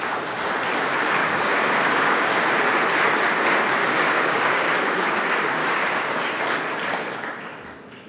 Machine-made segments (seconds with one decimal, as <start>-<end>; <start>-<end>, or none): 1.2-2.3; 3.8-4.6; 5.6-6.3